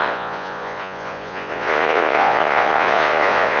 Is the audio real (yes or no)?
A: no